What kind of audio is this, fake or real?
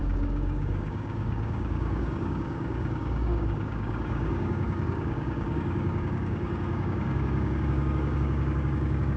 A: fake